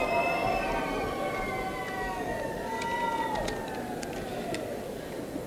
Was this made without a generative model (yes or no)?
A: yes